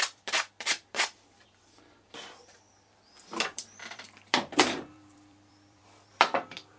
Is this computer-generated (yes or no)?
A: yes